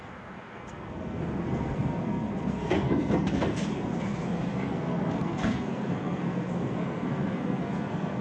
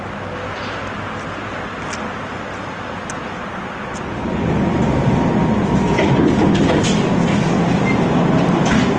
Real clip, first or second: second